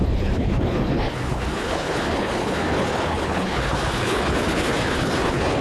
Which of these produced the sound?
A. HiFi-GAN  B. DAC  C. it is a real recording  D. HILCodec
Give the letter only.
D